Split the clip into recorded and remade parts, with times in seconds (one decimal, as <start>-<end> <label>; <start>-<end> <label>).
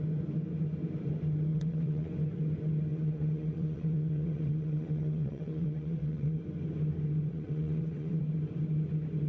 0.0-1.5 recorded; 1.5-2.1 remade; 2.1-2.9 recorded; 2.9-6.4 remade; 6.4-7.3 recorded; 7.3-8.2 remade; 8.2-9.3 recorded